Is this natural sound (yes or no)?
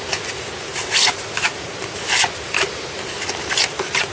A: yes